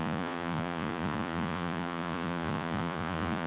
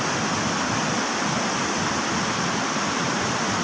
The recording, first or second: second